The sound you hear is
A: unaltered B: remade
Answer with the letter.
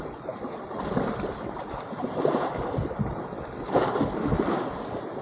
A